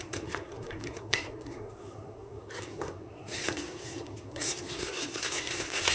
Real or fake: fake